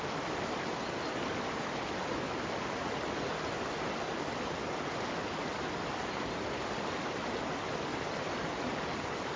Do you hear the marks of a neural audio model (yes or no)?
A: no